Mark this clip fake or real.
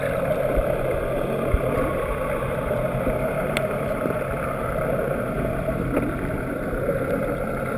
fake